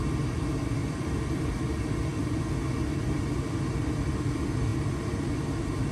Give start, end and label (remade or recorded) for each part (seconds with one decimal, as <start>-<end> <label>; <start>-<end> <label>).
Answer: 0.0-0.8 recorded; 0.8-1.4 remade; 1.4-5.9 recorded